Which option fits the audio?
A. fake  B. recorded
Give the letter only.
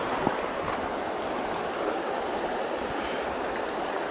B